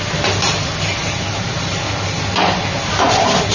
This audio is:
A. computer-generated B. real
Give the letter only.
B